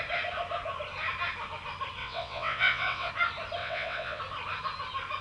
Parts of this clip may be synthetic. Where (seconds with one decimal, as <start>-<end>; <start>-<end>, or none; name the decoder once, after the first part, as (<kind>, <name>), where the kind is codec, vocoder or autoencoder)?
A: 2.0-3.1 (vocoder, WaveNeXt); 3.6-4.2